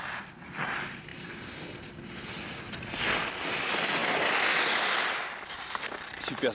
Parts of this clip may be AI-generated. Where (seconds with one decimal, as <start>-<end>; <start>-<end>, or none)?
none